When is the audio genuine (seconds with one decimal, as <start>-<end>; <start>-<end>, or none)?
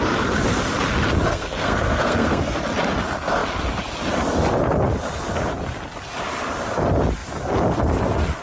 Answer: 0.0-1.3; 2.6-8.4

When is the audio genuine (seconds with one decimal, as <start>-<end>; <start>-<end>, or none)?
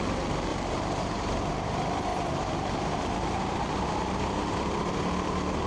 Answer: 0.0-0.5; 1.5-5.7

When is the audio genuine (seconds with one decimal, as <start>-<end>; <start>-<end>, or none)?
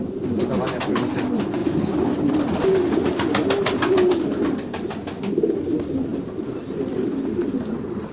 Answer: 0.0-8.1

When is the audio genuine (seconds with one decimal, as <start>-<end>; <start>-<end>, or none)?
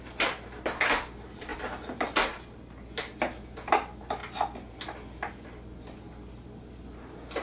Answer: 0.0-7.4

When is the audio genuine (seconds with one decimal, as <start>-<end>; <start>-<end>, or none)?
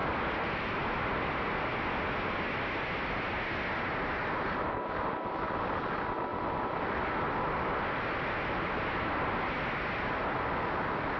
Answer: 0.0-11.2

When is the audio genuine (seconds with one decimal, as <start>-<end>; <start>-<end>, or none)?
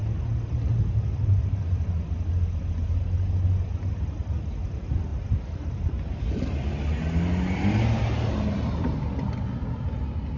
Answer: 0.0-10.4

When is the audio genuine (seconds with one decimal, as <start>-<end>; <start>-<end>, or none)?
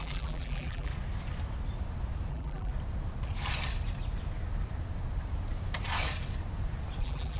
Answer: 0.9-2.3; 2.7-7.0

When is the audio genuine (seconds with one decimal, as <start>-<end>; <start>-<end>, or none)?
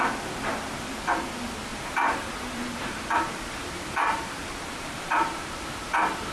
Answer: 0.0-1.7; 5.5-6.3